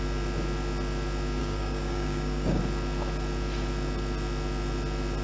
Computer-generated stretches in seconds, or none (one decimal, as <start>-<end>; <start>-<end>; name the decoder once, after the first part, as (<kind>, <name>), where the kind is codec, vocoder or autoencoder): 1.4-2.6 (codec, DAC)